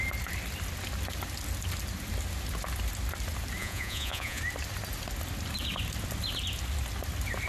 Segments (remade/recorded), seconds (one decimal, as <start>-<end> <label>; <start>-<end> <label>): 0.0-3.6 recorded; 3.6-4.4 remade; 4.4-7.5 recorded